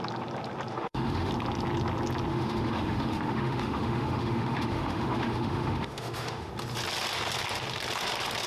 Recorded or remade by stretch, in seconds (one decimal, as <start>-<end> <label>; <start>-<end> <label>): 0.0-0.7 recorded; 0.7-1.3 remade; 1.3-2.3 recorded; 2.3-6.5 remade; 6.5-8.5 recorded